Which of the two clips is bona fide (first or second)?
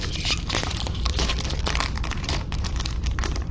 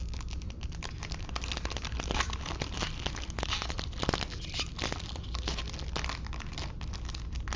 second